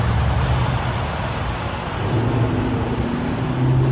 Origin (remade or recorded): recorded